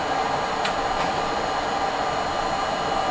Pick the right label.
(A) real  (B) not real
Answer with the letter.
A